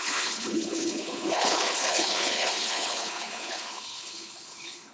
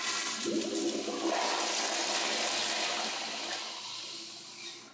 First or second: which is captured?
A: second